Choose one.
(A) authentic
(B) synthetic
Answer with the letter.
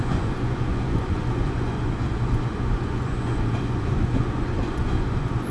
B